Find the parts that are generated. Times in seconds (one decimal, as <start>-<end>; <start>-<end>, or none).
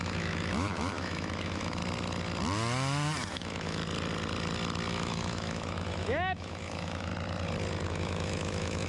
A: 0.0-1.8; 3.3-3.8; 4.9-7.1; 7.9-8.9